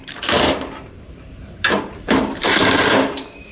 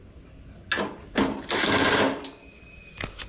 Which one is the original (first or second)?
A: second